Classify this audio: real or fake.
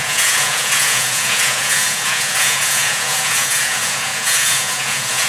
fake